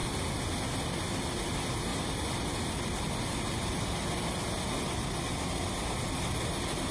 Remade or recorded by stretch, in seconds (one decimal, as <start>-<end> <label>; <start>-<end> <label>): 0.0-1.9 recorded; 1.9-5.4 remade; 5.4-6.9 recorded